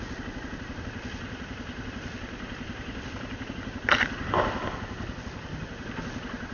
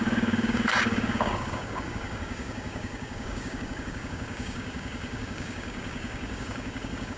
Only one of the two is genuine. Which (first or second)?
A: first